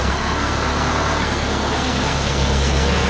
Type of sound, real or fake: fake